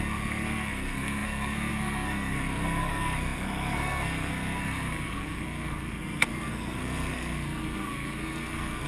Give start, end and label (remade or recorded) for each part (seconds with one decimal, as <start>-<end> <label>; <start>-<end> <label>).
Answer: 0.0-8.9 remade